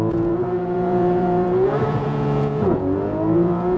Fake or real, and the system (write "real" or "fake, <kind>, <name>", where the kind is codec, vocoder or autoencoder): fake, vocoder, Vocos